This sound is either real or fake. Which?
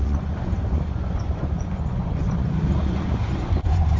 fake